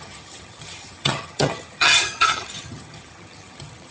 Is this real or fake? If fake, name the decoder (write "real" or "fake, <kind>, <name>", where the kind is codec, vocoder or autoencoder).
fake, vocoder, HiFi-GAN